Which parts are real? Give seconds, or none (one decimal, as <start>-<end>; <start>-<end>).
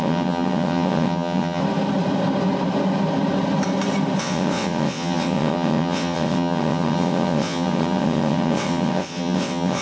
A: 1.6-4.2